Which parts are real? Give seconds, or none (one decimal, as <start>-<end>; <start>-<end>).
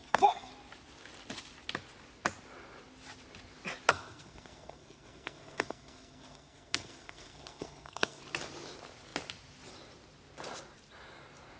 0.5-3.9; 8.2-11.6